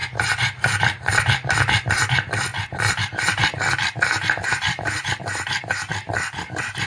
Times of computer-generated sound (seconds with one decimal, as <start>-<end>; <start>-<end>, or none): none